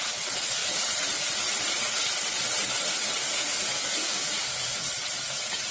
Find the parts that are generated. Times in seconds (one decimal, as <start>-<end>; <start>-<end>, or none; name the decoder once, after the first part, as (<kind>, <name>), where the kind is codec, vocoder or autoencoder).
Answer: 3.2-4.8 (codec, DAC)